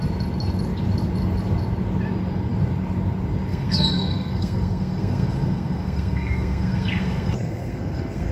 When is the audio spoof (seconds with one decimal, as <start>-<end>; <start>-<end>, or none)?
3.5-8.3